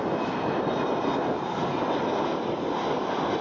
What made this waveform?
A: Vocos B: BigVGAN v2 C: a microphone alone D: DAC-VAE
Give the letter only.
C